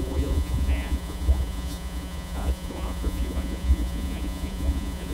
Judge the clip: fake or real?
fake